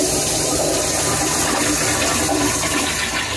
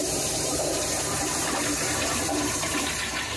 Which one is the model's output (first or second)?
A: second